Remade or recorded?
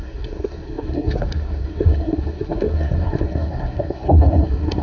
remade